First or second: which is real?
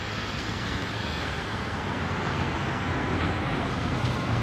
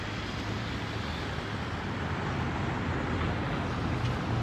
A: second